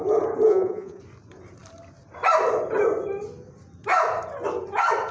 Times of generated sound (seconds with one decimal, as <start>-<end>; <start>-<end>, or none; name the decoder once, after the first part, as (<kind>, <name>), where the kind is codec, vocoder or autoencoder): 0.5-1.0 (vocoder, Vocos)